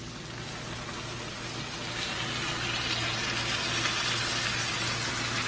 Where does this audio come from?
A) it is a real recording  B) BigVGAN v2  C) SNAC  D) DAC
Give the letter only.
A